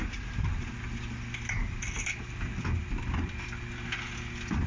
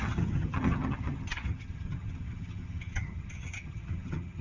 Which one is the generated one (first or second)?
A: second